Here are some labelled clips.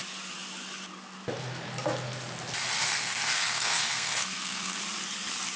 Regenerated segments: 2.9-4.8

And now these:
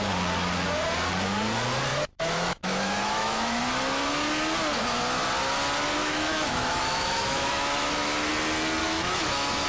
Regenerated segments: 1.9-3.6; 6.0-8.3; 8.8-9.7

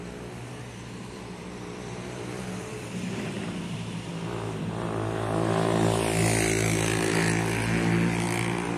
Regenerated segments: 1.4-4.1

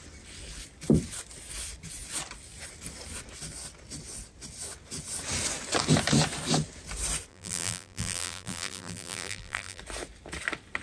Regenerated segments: 7.3-9.8

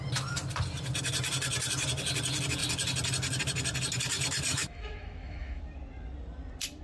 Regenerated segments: 4.5-5.6

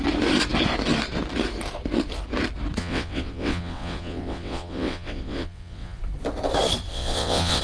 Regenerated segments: 2.8-6.0; 6.9-7.6

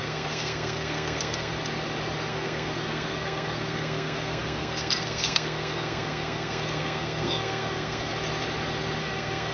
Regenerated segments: 0.0-1.5; 2.3-8.1; 9.0-9.5